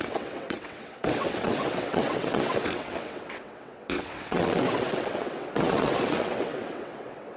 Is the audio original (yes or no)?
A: no